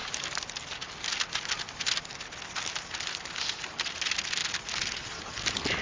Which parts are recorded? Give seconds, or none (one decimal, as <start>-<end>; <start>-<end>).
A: 1.1-5.8